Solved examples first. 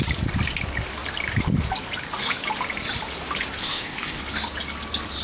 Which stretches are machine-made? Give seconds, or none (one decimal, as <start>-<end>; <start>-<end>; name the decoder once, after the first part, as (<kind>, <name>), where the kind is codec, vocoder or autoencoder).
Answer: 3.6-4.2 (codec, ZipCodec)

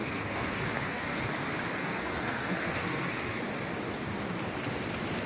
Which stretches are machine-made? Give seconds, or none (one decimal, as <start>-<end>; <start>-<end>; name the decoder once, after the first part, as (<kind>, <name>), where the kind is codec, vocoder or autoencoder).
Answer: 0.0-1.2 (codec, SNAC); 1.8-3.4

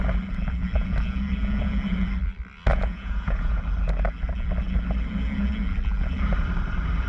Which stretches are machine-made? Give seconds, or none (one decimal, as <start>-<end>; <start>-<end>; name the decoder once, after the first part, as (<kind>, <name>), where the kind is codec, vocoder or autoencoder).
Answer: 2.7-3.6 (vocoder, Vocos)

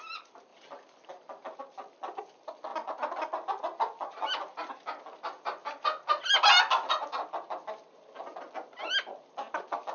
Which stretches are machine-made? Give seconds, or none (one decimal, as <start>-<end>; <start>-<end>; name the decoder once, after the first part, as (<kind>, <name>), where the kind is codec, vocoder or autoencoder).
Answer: none

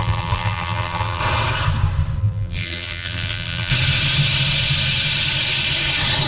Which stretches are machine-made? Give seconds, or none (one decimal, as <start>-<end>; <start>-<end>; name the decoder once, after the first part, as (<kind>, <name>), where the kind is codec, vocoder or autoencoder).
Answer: 0.0-1.2 (vocoder, BigVGAN v2); 2.2-3.7

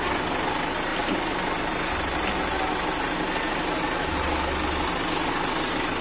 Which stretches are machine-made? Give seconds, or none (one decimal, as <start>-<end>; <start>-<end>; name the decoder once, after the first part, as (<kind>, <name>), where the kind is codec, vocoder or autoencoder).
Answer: none

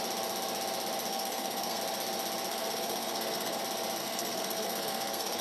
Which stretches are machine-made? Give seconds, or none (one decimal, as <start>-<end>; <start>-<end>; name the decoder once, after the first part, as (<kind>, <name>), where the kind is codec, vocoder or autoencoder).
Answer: 1.1-1.8 (codec, SNAC); 2.5-3.6; 4.0-5.4

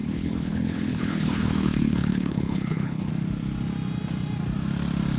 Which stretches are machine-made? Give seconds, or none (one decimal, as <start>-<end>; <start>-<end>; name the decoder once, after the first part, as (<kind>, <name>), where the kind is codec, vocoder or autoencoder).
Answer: 0.0-3.1 (codec, HILCodec)